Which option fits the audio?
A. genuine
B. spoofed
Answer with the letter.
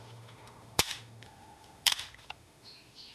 B